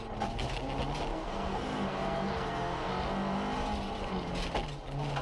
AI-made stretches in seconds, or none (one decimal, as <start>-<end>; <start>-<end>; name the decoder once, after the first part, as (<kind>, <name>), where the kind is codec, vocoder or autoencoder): 1.1-2.9 (codec, SNAC)